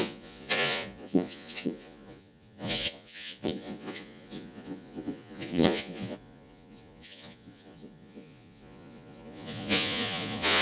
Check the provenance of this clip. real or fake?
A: fake